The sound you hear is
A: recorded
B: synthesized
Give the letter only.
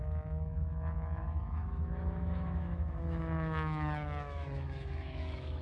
B